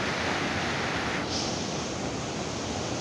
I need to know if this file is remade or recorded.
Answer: recorded